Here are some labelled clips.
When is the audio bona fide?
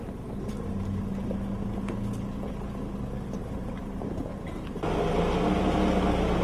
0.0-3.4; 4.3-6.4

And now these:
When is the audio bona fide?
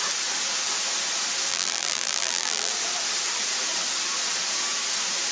0.0-1.5; 2.7-5.3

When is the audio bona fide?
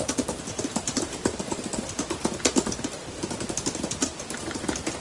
1.7-5.0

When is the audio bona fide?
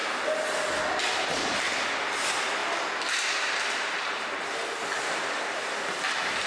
0.0-6.5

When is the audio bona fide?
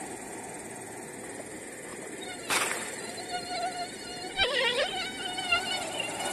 0.0-1.9; 3.2-4.1; 4.9-6.3